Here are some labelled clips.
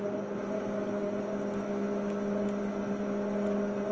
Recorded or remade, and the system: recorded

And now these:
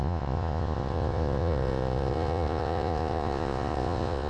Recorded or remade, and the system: remade, vocoder, Vocos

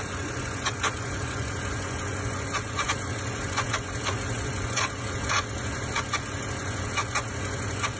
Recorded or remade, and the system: remade, vocoder, Vocos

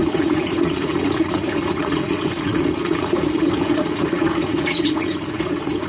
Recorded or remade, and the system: remade, vocoder, Vocos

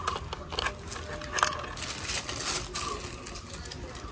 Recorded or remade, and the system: recorded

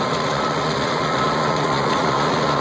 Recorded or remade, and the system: remade, vocoder, Vocos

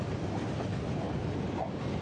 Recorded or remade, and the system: recorded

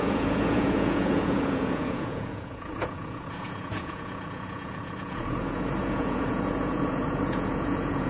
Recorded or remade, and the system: remade, vocoder, Vocos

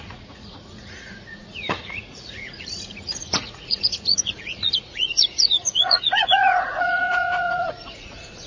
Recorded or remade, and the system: remade, vocoder, Vocos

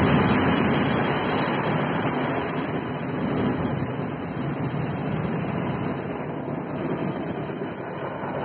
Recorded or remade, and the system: recorded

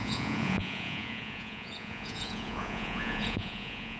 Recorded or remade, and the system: remade, vocoder, Vocos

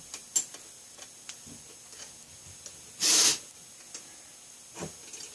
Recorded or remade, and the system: recorded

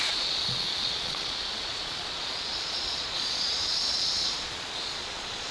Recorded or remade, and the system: remade, vocoder, Vocos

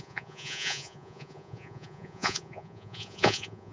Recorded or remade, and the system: remade, vocoder, Vocos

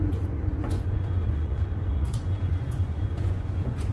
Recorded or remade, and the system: remade, vocoder, Vocos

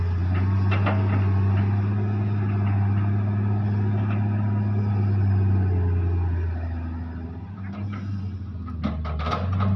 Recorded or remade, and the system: recorded